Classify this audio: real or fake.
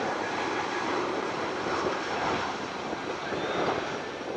fake